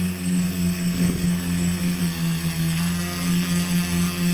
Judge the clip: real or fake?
fake